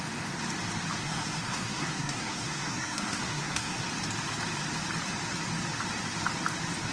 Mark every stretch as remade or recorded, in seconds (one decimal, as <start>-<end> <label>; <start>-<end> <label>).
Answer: 0.0-1.0 recorded; 1.0-3.8 remade; 3.8-6.9 recorded